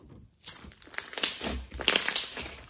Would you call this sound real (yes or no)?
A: yes